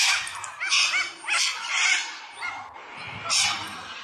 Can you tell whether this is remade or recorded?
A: recorded